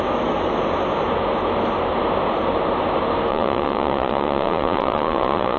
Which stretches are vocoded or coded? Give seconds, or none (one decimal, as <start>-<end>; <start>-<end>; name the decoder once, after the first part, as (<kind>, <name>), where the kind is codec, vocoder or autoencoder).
3.3-5.6 (vocoder, Vocos)